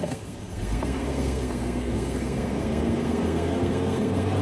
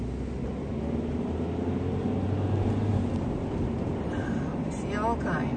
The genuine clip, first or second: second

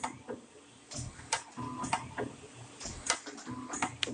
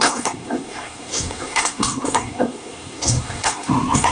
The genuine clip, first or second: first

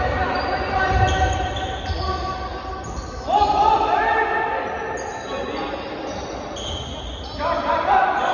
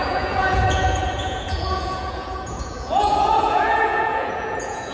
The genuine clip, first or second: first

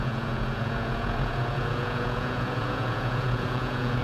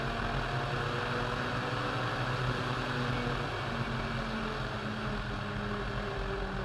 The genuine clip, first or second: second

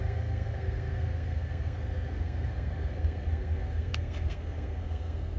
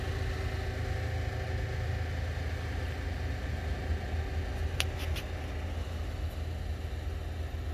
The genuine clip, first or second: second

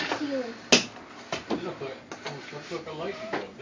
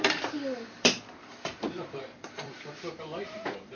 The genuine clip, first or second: first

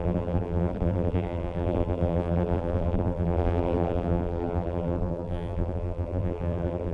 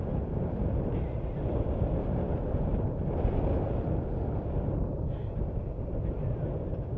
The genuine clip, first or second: second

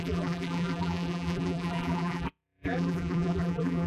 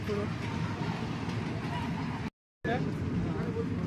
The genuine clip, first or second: second